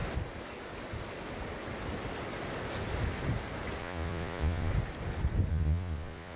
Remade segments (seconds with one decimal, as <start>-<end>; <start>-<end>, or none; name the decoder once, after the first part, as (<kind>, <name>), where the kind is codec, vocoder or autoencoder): 3.8-4.7 (vocoder, Vocos); 5.5-6.4

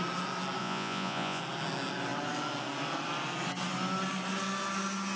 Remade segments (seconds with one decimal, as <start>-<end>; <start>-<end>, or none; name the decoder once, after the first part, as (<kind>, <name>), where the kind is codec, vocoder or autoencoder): 0.6-1.4 (vocoder, Vocos)

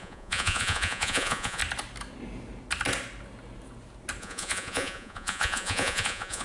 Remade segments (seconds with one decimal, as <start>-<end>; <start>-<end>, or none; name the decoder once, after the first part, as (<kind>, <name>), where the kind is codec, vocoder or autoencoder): 0.0-1.6 (vocoder, Vocos); 4.2-6.4

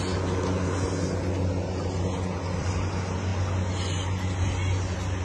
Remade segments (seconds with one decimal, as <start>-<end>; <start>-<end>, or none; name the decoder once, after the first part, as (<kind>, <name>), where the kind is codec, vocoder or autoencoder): none

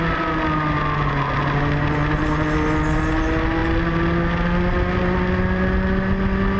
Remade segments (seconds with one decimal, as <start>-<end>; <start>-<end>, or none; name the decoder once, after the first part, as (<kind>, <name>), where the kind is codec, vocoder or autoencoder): none

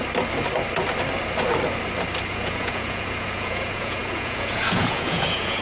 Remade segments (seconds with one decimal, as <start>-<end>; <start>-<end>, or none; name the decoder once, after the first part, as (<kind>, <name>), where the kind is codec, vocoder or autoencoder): 2.3-5.6 (vocoder, Vocos)

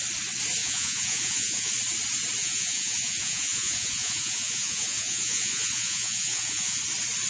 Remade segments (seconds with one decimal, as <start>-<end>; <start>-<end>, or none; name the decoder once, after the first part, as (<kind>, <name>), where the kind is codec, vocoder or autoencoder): 0.6-1.7 (vocoder, Vocos); 2.4-6.8

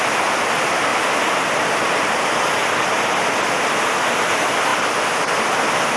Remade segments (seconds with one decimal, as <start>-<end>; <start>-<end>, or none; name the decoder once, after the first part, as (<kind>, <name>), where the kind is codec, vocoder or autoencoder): none